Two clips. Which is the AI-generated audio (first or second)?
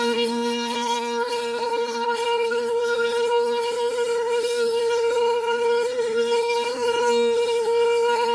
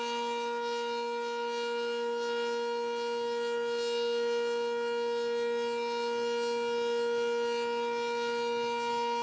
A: first